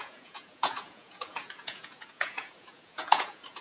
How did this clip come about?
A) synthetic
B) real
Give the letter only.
A